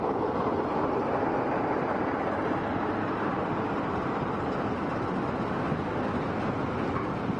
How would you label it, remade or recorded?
recorded